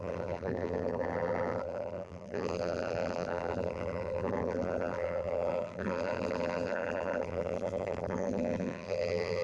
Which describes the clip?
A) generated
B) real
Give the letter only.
A